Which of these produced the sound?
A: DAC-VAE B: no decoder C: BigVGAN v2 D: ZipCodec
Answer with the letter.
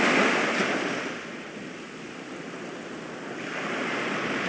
B